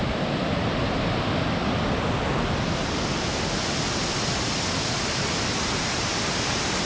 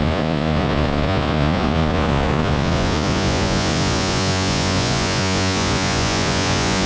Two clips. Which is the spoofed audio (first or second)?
second